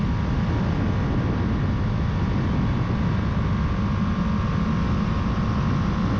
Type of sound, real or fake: real